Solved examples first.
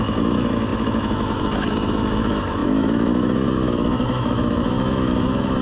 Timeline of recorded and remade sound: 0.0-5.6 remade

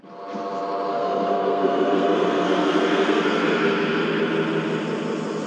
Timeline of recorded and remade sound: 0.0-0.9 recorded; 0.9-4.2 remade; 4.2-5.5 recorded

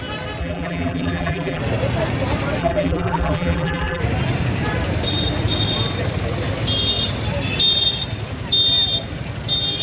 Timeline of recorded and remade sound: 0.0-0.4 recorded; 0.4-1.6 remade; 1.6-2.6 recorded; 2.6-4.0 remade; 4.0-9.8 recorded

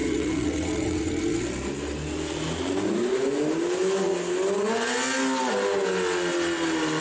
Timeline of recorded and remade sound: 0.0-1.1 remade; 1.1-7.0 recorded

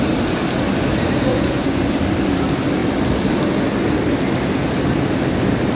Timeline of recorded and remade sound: 0.0-1.3 recorded; 1.3-1.9 remade; 1.9-5.8 recorded

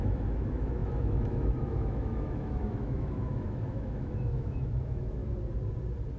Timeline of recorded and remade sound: 0.0-5.2 remade; 5.2-6.2 recorded

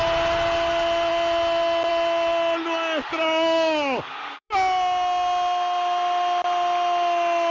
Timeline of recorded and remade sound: 0.0-3.1 recorded; 3.1-4.5 remade; 4.5-7.5 recorded

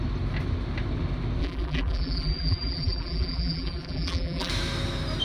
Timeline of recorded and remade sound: 0.0-1.4 recorded; 1.4-4.5 remade; 4.5-5.2 recorded